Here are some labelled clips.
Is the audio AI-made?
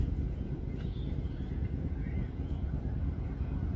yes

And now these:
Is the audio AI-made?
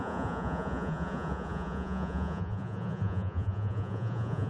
yes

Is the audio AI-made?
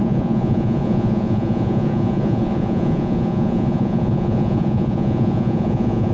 yes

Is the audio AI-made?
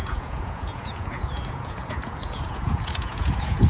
yes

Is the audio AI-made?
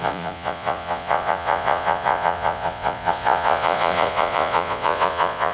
yes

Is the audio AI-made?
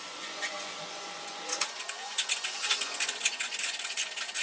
yes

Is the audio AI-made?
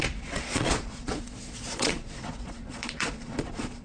yes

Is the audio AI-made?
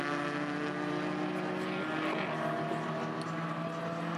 no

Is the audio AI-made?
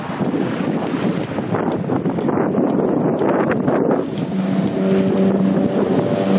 no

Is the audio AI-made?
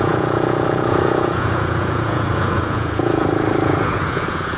yes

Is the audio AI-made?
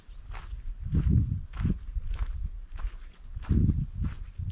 no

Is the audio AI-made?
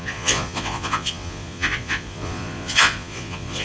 yes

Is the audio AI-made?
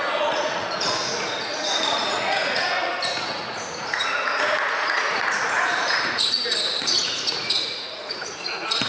yes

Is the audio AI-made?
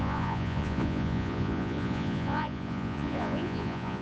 yes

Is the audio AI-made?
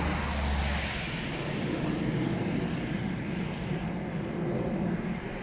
no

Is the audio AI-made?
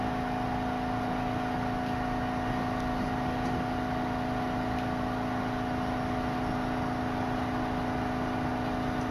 no